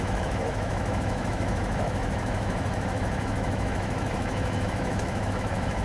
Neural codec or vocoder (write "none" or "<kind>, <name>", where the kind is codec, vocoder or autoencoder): autoencoder, DAC-VAE